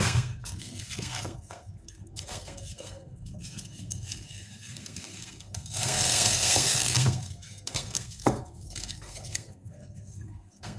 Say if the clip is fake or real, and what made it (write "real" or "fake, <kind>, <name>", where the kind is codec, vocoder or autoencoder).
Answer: fake, codec, SNAC